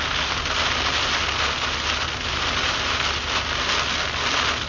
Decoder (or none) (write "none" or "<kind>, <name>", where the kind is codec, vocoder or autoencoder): none